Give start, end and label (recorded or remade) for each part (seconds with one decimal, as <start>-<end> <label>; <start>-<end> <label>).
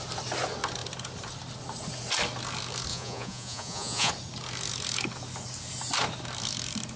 0.0-2.9 recorded; 2.9-4.1 remade; 4.1-7.0 recorded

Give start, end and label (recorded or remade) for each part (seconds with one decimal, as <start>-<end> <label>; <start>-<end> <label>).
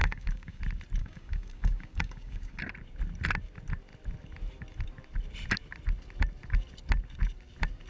0.0-0.6 remade; 0.6-1.0 recorded; 1.0-2.6 remade; 2.6-7.9 recorded